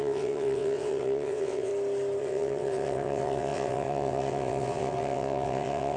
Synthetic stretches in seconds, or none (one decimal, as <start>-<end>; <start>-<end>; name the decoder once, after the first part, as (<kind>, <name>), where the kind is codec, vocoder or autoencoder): 0.0-1.7 (vocoder, WaveNeXt); 2.2-6.0